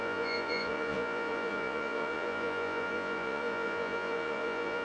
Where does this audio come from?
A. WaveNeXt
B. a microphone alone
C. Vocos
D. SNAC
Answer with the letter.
C